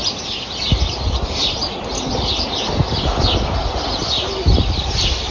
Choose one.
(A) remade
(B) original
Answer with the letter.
B